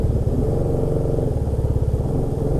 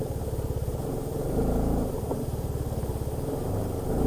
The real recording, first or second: first